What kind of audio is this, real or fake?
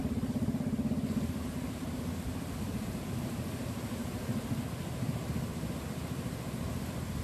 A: real